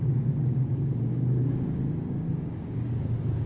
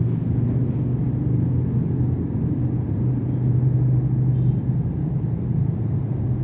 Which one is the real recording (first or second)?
second